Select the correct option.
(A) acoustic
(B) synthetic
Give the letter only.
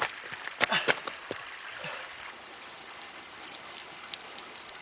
A